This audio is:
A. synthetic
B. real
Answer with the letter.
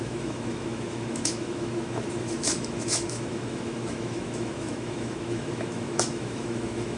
A